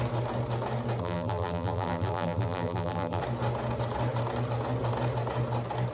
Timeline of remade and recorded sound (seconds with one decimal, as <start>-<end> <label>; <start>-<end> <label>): 0.0-1.0 recorded; 1.0-3.2 remade; 3.2-5.9 recorded